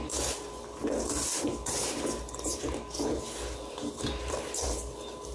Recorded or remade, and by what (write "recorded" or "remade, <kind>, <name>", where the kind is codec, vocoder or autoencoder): recorded